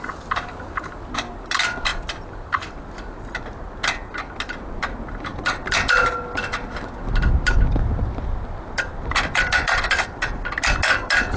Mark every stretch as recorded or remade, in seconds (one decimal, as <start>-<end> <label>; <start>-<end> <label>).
0.0-11.4 recorded